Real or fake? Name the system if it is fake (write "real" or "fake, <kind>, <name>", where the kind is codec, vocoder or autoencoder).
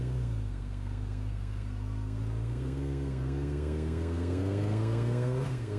fake, codec, SNAC